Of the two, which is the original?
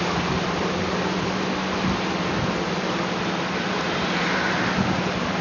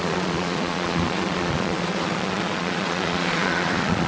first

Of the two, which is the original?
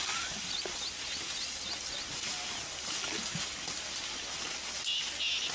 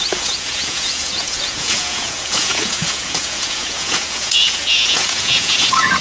first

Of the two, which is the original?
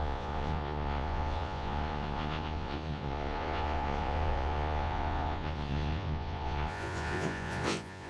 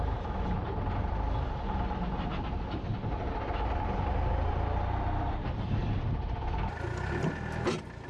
second